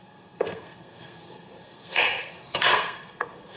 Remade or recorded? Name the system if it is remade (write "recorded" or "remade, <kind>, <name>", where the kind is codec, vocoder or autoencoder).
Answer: remade, codec, SNAC